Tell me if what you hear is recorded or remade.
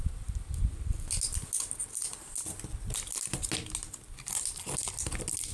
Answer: recorded